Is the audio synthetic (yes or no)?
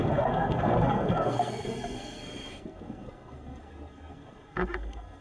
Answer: yes